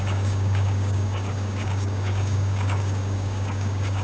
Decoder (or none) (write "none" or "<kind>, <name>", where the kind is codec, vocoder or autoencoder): codec, DAC